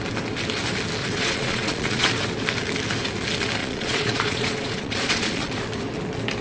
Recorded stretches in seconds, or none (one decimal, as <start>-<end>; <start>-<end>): 0.0-1.0; 2.1-3.6; 5.5-6.4